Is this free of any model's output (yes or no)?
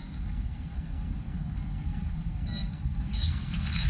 no